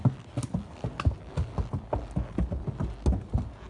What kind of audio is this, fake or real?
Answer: real